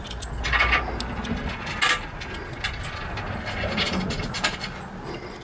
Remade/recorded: recorded